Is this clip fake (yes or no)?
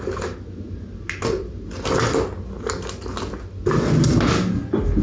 no